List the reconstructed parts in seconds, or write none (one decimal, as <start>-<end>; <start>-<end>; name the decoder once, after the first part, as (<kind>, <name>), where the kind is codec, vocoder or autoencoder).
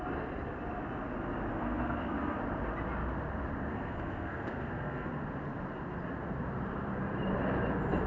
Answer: 1.5-2.4 (codec, SNAC); 3.7-5.2